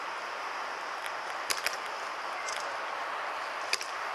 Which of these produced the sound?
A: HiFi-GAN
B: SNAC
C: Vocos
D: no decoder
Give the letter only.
D